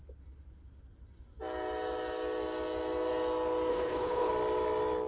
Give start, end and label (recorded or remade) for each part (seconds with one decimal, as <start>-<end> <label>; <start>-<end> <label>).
0.0-3.7 recorded; 3.7-4.3 remade; 4.3-5.1 recorded